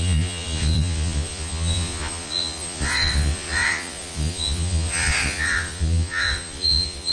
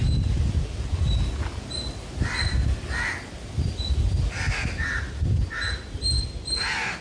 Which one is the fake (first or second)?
first